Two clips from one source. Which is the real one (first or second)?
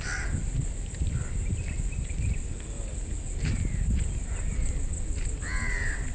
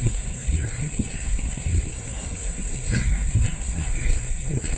first